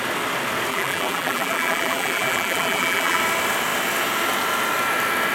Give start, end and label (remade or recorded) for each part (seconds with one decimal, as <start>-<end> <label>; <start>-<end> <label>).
0.0-0.7 recorded; 0.7-3.2 remade; 3.2-5.3 recorded